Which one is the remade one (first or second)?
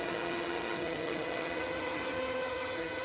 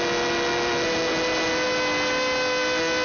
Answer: first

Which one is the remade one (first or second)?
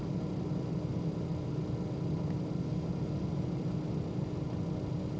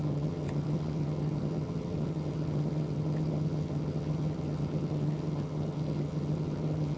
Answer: second